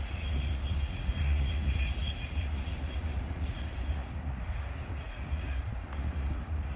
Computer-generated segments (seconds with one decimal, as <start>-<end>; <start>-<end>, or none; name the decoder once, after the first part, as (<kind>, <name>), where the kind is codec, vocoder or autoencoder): 0.0-6.8 (vocoder, Vocos)